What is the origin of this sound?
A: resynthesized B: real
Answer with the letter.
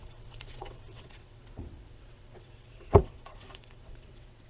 A